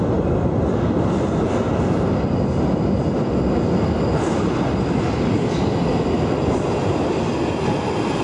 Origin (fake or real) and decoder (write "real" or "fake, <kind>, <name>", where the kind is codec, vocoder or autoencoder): real